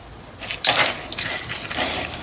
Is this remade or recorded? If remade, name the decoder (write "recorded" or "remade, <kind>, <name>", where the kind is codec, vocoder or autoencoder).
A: recorded